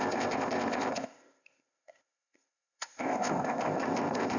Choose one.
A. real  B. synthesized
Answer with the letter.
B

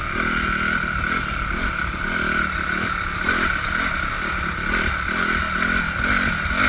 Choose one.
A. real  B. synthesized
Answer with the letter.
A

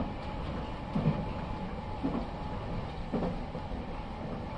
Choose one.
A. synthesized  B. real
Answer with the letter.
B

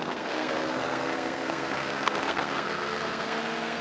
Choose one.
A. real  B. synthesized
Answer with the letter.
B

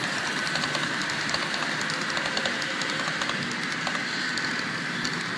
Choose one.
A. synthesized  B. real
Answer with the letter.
B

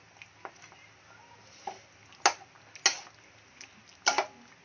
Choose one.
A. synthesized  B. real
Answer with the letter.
B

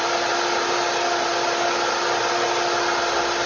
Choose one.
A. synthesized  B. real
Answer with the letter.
B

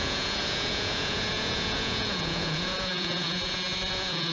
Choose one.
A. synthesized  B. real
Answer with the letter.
A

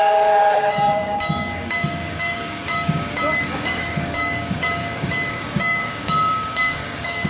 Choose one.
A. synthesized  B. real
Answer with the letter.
A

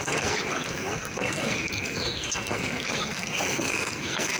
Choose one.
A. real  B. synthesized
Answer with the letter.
B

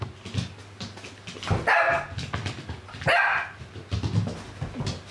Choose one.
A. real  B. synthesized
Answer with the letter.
A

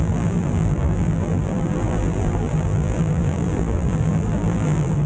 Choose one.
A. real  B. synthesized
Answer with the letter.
B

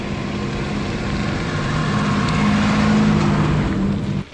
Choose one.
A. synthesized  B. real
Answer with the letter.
B